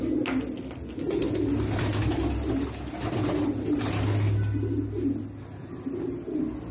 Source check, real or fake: real